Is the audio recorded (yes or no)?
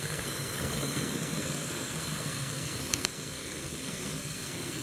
no